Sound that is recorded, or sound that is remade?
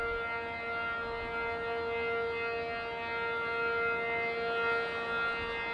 recorded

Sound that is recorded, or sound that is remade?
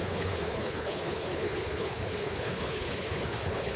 remade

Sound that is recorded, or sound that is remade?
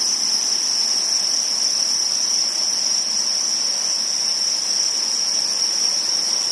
recorded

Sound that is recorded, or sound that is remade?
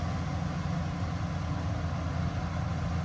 recorded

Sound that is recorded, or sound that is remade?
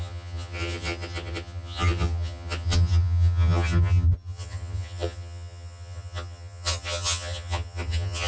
remade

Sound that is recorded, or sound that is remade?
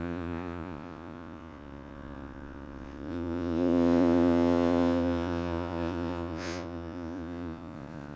remade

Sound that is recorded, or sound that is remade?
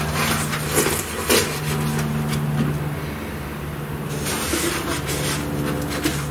recorded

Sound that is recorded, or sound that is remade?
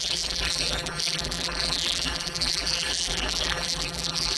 remade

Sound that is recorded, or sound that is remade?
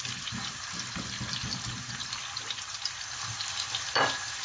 recorded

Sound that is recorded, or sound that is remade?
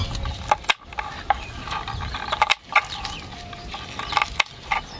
recorded